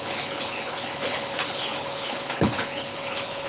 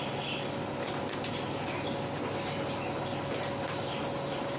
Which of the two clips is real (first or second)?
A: second